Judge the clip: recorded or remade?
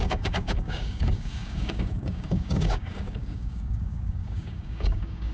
remade